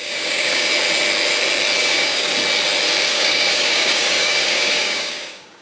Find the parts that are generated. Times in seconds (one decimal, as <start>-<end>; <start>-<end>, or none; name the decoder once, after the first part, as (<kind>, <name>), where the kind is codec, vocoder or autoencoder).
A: 0.0-0.7 (codec, DAC); 1.8-2.3; 3.1-5.6